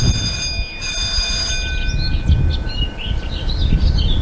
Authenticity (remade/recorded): recorded